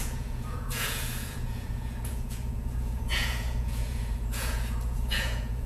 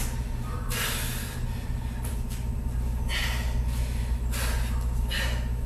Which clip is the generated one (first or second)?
first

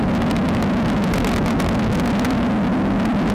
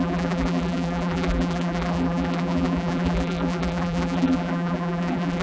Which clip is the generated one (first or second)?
second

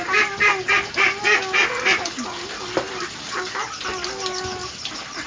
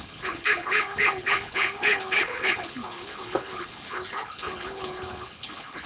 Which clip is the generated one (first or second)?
second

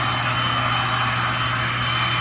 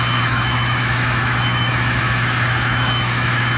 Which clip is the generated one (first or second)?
second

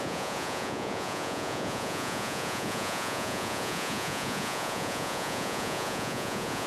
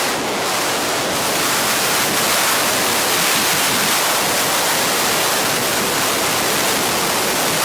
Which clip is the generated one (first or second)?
first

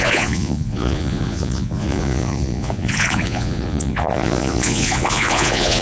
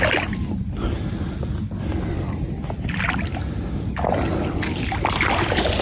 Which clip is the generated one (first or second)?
first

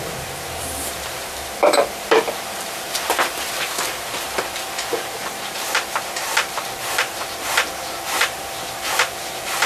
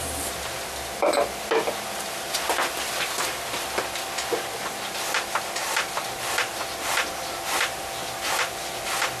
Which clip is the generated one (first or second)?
first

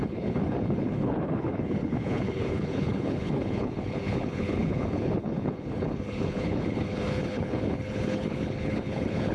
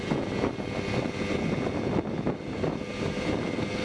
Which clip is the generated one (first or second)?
first